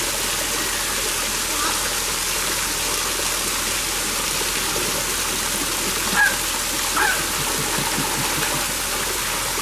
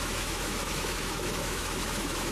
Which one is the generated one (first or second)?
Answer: second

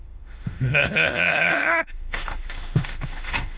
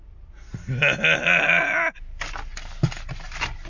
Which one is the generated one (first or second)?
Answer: first